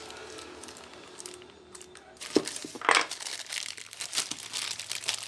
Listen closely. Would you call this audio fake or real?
real